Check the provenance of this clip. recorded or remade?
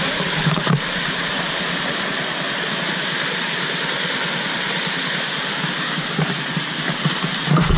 recorded